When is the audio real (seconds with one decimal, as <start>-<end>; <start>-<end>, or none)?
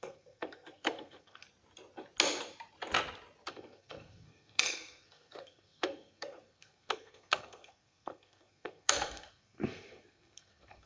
1.4-3.5